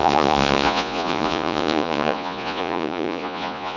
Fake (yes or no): yes